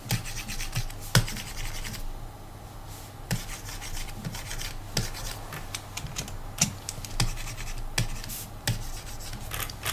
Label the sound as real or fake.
real